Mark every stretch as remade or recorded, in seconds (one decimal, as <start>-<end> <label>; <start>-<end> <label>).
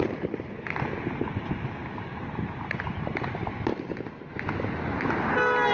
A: 0.0-2.1 recorded; 2.1-3.2 remade; 3.2-5.7 recorded